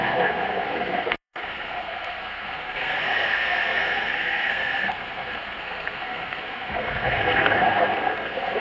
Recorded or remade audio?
remade